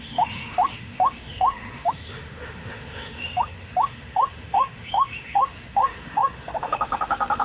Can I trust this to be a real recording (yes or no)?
no